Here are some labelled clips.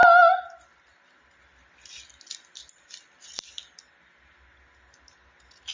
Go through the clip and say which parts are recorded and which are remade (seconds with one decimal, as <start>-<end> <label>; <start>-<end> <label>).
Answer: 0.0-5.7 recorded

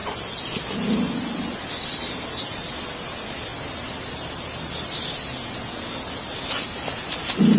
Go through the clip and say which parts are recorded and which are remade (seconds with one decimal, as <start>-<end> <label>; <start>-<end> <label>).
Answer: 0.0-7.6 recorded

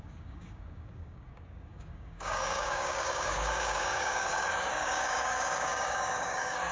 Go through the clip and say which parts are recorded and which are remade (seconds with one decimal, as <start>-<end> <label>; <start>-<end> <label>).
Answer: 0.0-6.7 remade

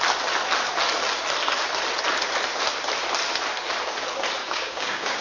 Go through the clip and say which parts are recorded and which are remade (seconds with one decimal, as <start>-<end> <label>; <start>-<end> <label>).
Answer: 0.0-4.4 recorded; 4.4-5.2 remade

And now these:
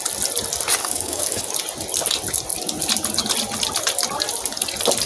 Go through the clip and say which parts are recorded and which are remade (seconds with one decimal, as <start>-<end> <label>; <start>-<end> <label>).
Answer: 0.0-0.8 recorded; 0.8-1.5 remade; 1.5-5.1 recorded

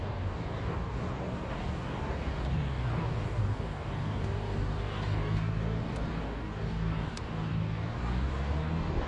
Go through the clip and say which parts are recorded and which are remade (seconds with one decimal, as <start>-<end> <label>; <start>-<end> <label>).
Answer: 0.0-9.1 remade

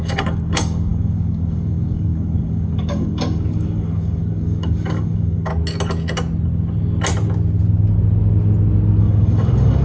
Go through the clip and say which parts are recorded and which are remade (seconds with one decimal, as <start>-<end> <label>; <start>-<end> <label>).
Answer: 0.0-5.5 remade; 5.5-9.0 recorded; 9.0-9.8 remade

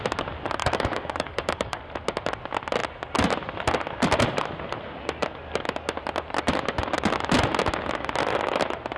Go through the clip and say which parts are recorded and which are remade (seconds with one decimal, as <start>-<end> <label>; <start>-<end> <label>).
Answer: 0.0-0.6 recorded; 0.6-1.8 remade; 1.8-9.0 recorded